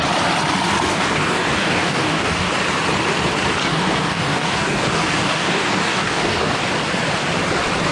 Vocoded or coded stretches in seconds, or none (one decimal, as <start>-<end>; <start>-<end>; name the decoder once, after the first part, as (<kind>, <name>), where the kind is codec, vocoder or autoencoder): 0.9-2.5 (codec, DAC); 3.6-6.6